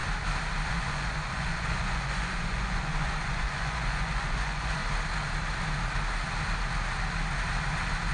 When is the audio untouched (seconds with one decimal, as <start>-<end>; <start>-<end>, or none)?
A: 0.0-0.7; 4.8-8.1